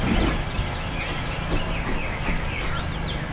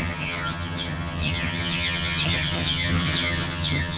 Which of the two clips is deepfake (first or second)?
second